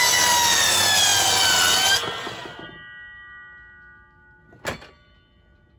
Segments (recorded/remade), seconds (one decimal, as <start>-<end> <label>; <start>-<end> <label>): 0.0-5.8 recorded